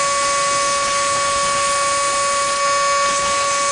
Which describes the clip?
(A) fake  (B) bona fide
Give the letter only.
B